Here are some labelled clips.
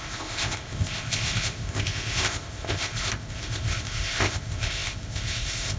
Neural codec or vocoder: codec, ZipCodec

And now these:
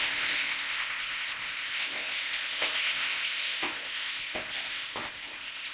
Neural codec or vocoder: codec, ZipCodec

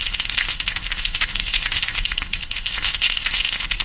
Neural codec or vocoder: codec, ZipCodec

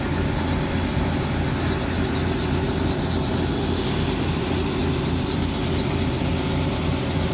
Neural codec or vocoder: none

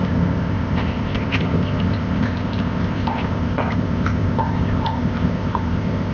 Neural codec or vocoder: codec, ZipCodec